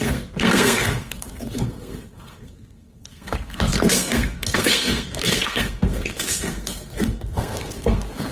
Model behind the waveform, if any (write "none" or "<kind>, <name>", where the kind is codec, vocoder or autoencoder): codec, SNAC